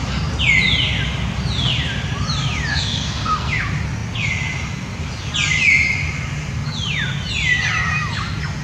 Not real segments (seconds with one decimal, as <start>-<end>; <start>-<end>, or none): 2.7-3.5